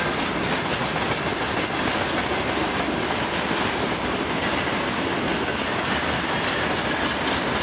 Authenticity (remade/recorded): recorded